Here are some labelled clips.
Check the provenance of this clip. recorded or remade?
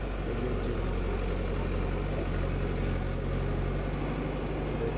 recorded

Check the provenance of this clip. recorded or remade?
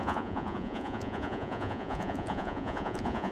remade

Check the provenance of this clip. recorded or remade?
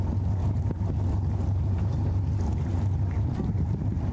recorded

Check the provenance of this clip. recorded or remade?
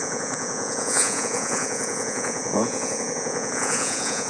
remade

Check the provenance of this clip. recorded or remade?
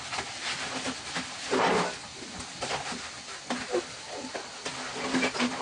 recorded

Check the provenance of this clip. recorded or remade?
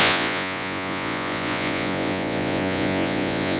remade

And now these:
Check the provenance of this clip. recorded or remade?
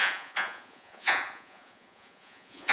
remade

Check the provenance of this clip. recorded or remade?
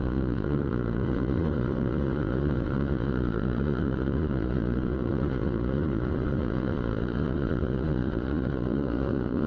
remade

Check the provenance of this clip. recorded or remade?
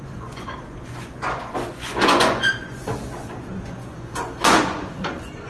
remade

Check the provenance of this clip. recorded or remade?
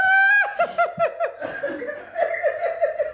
recorded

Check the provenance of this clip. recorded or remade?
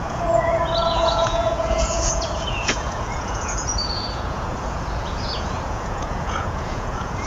remade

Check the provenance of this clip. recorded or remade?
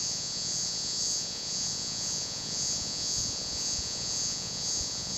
remade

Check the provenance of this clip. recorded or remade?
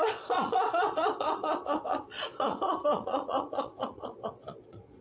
remade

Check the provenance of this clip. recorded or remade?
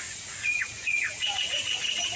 remade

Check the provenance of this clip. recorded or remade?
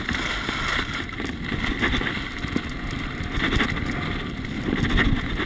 recorded